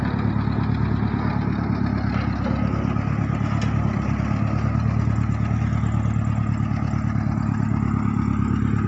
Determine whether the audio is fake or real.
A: real